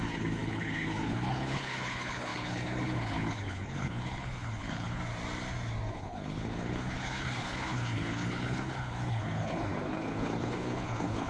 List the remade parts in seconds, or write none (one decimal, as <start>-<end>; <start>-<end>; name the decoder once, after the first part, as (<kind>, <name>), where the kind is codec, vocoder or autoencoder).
0.0-5.0 (codec, HILCodec); 5.9-11.3